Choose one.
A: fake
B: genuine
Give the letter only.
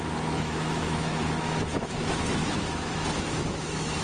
A